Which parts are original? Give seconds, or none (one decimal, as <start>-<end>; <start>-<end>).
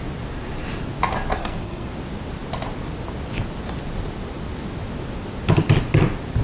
0.0-1.4; 1.9-6.4